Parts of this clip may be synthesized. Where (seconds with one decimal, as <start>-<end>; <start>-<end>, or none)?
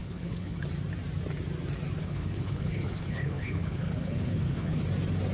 0.0-0.6; 2.0-4.8